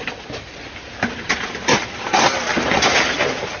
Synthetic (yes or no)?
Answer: no